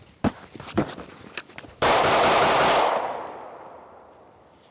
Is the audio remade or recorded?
remade